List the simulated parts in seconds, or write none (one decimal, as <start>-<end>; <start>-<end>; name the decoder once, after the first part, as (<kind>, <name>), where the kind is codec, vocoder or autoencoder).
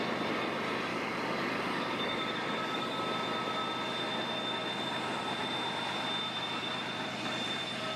0.9-3.0 (codec, DAC)